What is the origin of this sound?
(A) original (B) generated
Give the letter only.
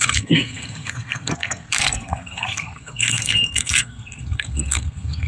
B